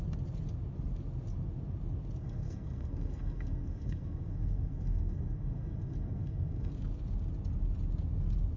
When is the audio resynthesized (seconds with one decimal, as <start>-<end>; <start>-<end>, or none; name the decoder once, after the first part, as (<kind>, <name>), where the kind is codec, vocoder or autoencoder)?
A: 2.2-6.7 (codec, SNAC)

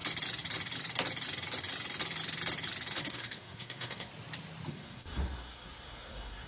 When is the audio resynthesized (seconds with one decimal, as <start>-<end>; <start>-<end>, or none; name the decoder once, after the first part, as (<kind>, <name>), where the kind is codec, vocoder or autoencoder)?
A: 3.0-4.1 (codec, SNAC); 4.7-6.5

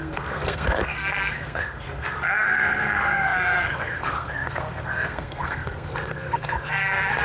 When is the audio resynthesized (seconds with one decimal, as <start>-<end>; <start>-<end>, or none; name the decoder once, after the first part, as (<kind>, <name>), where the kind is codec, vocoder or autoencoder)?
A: 0.0-7.2 (codec, SNAC)

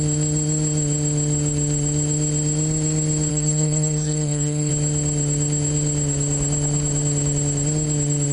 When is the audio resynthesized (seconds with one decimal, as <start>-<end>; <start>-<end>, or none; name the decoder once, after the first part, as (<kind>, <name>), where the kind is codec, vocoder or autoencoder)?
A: 3.3-4.7 (codec, SNAC)

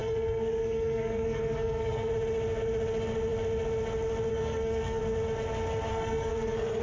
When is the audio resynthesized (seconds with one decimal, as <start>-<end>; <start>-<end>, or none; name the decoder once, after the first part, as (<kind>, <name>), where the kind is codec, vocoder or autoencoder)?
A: 0.0-2.1 (codec, SNAC); 4.3-5.0; 5.9-6.8

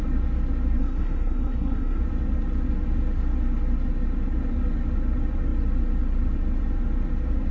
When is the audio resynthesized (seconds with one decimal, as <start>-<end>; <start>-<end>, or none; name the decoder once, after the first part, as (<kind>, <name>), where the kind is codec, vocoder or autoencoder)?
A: 0.8-2.0 (codec, SNAC)

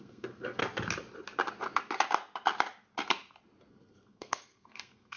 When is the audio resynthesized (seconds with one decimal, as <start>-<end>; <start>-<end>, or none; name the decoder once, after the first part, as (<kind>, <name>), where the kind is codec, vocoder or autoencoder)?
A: 0.0-0.6 (codec, SNAC); 3.7-5.2

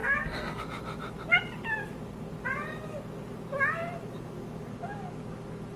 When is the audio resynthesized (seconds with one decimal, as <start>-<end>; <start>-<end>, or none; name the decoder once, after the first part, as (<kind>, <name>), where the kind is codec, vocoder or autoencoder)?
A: 0.0-0.6 (codec, SNAC)